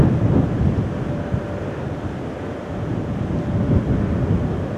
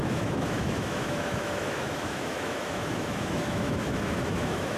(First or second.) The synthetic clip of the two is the second